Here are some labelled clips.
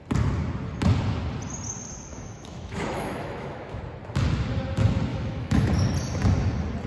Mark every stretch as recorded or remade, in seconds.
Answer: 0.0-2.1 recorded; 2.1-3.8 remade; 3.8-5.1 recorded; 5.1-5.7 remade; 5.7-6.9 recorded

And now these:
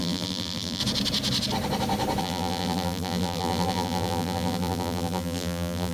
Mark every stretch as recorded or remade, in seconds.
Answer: 0.0-0.8 remade; 0.8-2.2 recorded; 2.2-5.9 remade

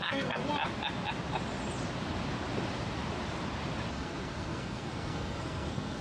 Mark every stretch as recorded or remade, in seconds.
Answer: 0.0-0.4 remade; 0.4-3.9 recorded; 3.9-6.0 remade

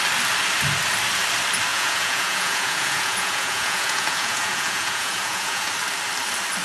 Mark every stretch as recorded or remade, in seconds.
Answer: 0.0-1.7 recorded; 1.7-5.7 remade; 5.7-6.6 recorded

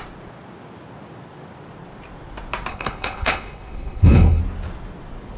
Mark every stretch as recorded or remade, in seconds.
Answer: 0.0-2.7 recorded; 2.7-4.4 remade; 4.4-5.4 recorded

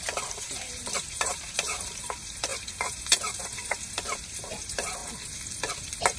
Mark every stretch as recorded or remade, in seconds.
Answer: 0.0-5.0 remade; 5.0-5.8 recorded; 5.8-6.2 remade

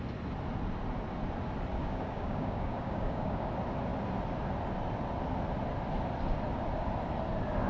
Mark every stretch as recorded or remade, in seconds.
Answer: 0.0-1.8 recorded; 1.8-3.5 remade; 3.5-7.7 recorded